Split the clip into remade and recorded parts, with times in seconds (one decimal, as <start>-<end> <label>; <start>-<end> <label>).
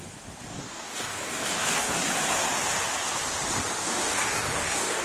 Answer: 0.0-0.5 recorded; 0.5-2.1 remade; 2.1-3.8 recorded; 3.8-5.0 remade